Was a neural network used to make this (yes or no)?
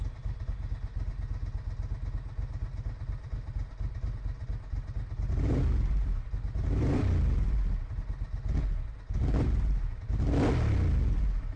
no